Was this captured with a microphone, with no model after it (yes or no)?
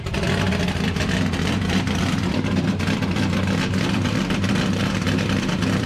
no